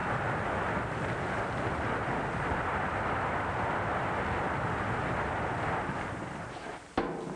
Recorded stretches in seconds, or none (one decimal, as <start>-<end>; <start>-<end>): 0.0-7.4